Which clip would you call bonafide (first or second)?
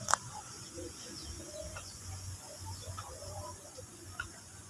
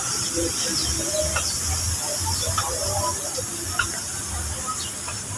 second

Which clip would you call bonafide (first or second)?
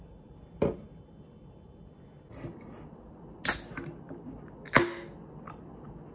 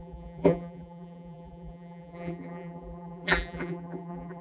first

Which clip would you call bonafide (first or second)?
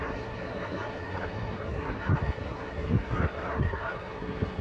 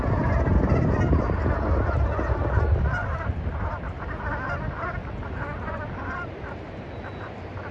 second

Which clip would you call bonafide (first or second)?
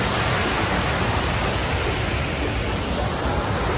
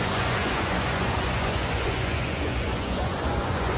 first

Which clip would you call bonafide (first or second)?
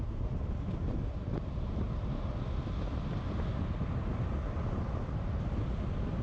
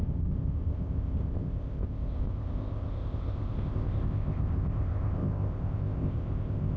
first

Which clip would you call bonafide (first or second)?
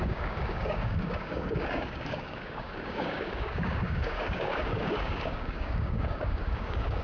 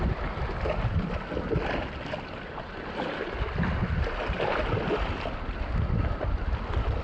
second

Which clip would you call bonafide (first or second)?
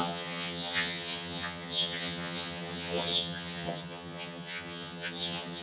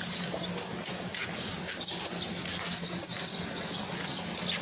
second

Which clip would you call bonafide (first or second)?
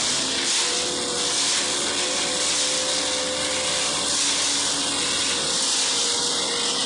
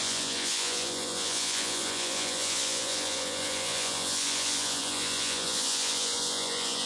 first